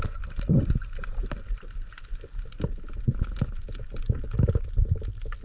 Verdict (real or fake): real